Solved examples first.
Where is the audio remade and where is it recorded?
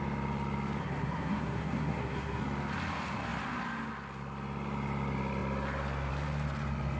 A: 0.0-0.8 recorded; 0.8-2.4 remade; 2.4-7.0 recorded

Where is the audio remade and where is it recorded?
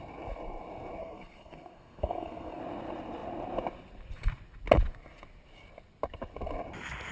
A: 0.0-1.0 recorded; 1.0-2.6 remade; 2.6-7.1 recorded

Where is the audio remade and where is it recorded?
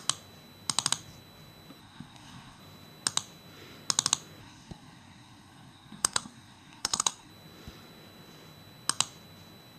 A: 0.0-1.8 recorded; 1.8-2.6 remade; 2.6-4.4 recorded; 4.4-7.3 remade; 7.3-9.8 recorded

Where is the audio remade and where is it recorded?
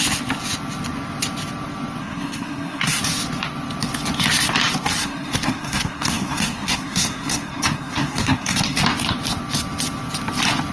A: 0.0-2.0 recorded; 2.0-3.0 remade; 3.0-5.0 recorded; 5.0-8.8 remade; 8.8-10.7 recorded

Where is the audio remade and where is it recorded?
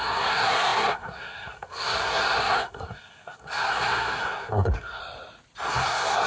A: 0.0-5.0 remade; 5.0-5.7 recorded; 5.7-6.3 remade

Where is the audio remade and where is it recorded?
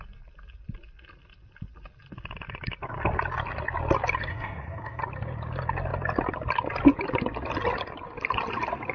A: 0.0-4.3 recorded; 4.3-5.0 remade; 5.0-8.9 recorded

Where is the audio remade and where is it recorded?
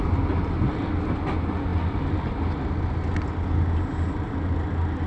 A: 0.0-5.1 recorded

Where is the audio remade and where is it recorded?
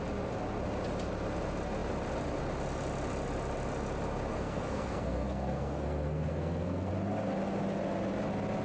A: 0.0-4.3 recorded; 4.3-6.9 remade; 6.9-8.6 recorded